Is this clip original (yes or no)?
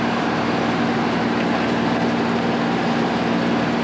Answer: yes